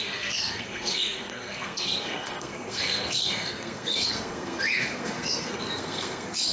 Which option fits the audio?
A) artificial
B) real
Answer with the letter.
A